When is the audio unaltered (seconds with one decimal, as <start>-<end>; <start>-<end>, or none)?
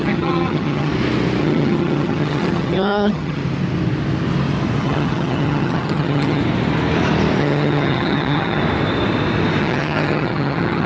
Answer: 0.9-1.4; 3.4-4.8; 6.4-7.4; 8.6-9.6